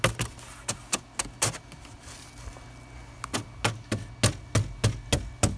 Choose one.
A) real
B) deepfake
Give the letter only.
A